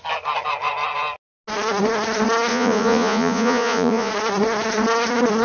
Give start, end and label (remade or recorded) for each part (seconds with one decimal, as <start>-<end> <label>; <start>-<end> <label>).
0.0-2.5 recorded; 2.5-4.1 remade; 4.1-5.4 recorded